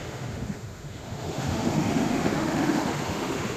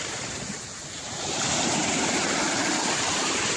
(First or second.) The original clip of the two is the second